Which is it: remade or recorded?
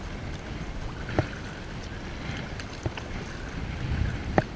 recorded